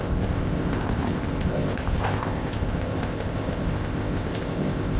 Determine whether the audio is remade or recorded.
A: remade